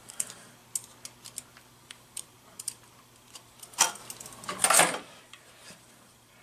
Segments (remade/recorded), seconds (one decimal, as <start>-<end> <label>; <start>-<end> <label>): 0.0-0.6 remade; 0.6-1.4 recorded; 1.4-4.0 remade; 4.0-4.7 recorded; 4.7-6.4 remade